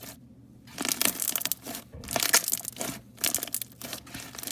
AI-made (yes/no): no